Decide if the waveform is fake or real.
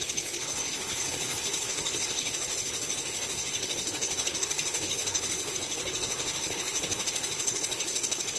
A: fake